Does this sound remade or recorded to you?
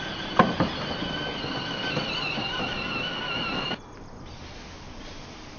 recorded